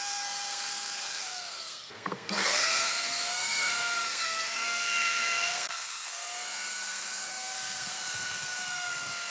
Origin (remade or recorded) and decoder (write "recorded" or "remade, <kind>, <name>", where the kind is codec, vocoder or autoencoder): remade, codec, SNAC